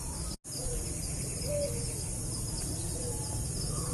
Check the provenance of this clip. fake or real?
real